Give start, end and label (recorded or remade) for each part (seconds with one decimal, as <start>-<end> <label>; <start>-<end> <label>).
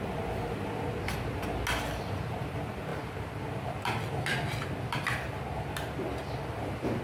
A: 0.0-7.0 recorded